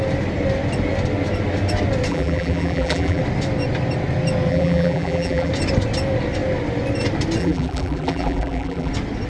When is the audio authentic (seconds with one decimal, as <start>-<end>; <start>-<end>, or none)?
0.0-2.1; 3.2-4.5; 5.5-7.4; 8.9-9.3